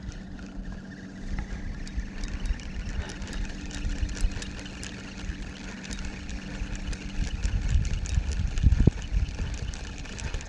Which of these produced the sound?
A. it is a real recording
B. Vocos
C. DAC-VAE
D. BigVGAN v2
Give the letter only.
A